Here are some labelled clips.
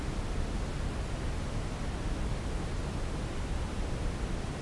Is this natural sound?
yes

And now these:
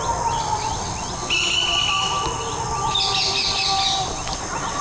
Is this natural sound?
yes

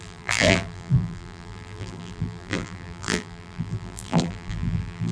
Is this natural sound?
no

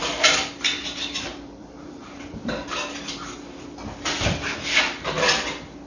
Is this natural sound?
no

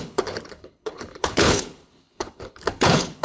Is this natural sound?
no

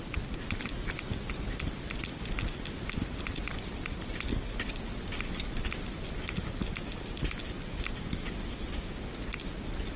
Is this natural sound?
yes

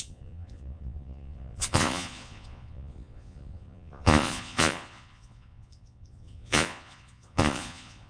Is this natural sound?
no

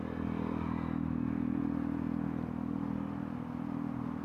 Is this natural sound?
yes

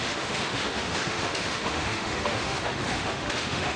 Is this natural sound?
no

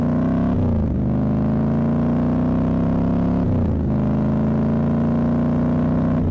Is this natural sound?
yes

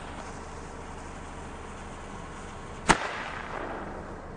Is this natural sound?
yes